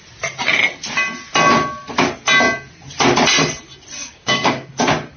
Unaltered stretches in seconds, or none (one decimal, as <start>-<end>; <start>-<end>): 0.0-4.0; 4.7-5.2